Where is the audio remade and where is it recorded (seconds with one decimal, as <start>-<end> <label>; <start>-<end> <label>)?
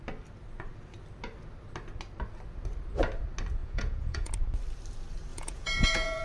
0.0-3.6 recorded; 3.6-4.3 remade; 4.3-5.3 recorded; 5.3-6.2 remade